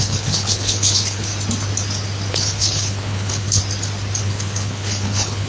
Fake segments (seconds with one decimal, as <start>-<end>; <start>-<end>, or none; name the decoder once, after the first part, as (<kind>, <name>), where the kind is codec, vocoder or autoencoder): 0.0-1.3 (codec, HILCodec); 2.3-3.6; 4.2-5.5